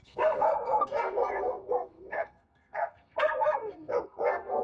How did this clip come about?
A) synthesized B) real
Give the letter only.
A